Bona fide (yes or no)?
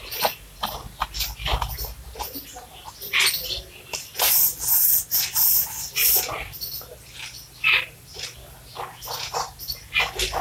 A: yes